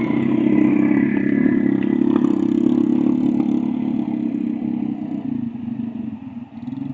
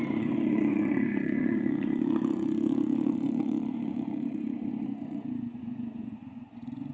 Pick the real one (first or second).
first